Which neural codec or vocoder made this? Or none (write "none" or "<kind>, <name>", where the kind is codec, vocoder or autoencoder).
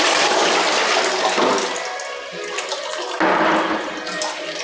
none